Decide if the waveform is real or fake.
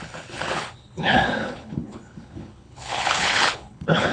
fake